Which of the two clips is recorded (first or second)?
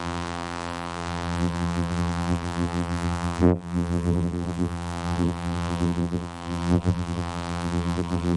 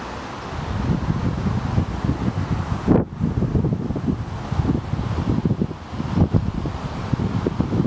second